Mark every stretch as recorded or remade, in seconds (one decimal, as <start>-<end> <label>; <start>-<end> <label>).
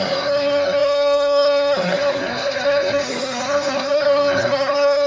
0.0-5.1 remade